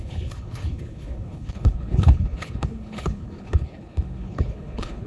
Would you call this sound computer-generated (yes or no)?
yes